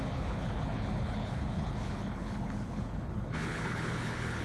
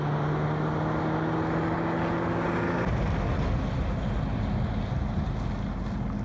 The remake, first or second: first